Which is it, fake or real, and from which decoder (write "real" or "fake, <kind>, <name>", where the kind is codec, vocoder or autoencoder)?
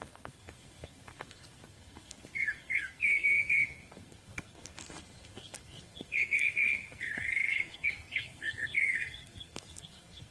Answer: fake, codec, SNAC